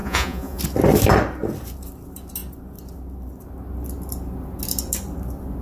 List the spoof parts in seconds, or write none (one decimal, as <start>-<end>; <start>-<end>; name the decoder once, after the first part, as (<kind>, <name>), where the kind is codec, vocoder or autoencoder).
0.0-0.6 (vocoder, Vocos)